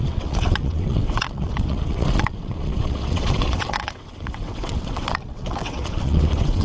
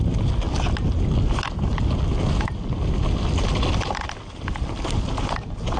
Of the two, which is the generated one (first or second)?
first